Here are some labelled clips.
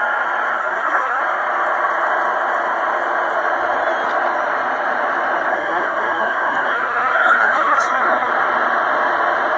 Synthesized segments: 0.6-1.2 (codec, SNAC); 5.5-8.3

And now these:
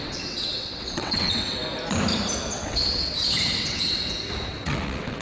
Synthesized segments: 0.0-1.6 (vocoder, WaveNeXt); 2.5-4.0; 4.5-5.2

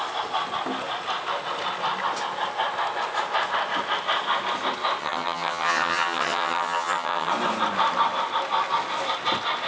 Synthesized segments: 5.0-7.3 (vocoder, HiFi-GAN)

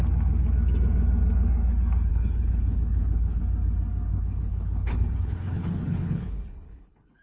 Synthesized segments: 2.1-3.4 (codec, HILCodec); 4.1-7.2